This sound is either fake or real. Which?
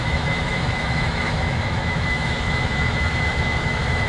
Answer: fake